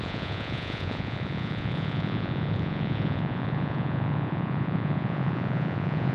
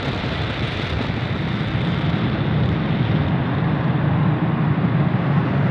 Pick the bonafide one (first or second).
second